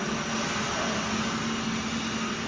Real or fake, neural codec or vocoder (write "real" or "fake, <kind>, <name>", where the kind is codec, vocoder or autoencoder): real